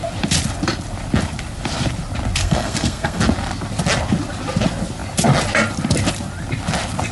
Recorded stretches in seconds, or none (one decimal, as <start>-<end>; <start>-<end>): 0.0-2.4; 3.2-7.1